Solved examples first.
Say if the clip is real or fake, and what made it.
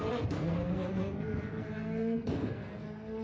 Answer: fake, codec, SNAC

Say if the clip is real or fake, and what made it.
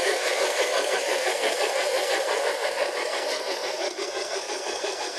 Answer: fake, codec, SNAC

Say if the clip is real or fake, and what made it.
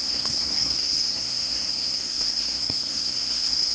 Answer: fake, codec, SNAC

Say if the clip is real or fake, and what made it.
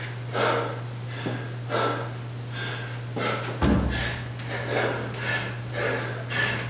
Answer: real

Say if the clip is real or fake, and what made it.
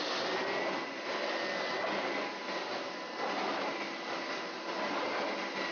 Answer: real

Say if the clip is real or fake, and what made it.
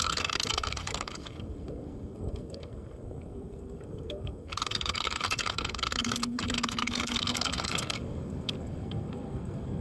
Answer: fake, codec, SNAC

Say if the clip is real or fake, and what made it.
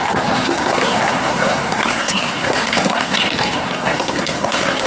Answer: fake, codec, SNAC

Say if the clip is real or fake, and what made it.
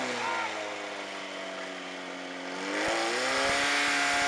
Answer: real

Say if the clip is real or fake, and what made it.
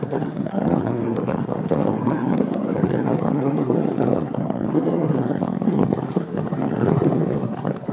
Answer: fake, codec, SNAC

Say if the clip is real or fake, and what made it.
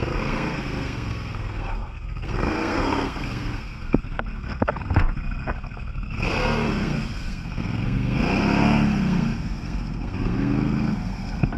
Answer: fake, codec, SNAC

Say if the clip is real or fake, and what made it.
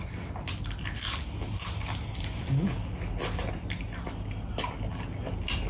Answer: real